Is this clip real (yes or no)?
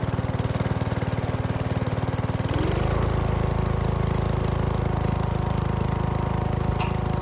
yes